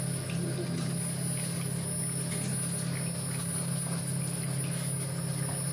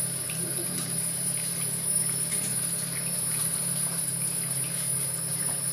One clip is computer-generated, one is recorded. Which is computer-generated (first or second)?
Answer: second